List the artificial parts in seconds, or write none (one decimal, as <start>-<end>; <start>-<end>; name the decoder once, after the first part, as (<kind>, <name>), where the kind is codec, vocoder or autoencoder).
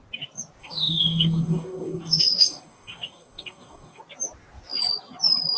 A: 0.6-4.0 (codec, DAC)